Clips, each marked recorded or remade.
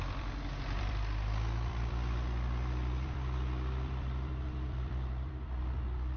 remade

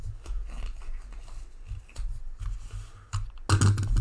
recorded